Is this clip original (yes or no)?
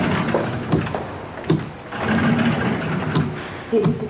yes